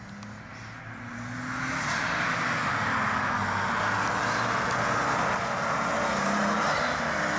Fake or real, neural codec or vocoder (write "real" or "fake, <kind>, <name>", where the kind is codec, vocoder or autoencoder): real